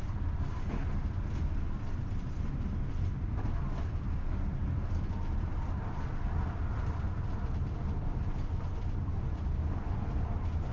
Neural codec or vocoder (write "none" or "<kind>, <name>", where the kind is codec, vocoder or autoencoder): none